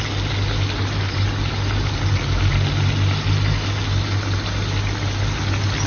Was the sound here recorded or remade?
recorded